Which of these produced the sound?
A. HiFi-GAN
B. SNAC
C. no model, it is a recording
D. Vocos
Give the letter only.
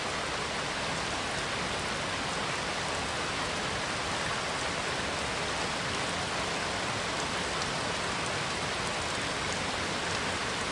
C